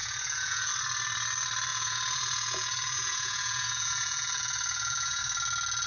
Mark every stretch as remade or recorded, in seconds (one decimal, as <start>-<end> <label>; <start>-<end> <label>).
0.0-0.7 remade; 0.7-1.7 recorded; 1.7-5.2 remade; 5.2-5.9 recorded